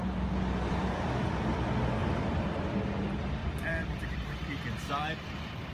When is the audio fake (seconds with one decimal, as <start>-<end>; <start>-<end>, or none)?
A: 2.0-2.6; 3.4-4.3